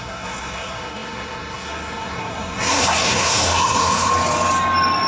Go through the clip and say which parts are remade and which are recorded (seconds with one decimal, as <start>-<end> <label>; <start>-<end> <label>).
0.0-4.1 remade; 4.1-5.1 recorded